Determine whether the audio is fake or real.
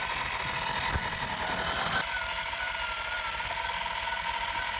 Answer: real